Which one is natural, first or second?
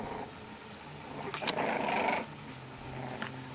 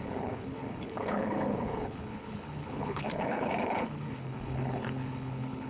first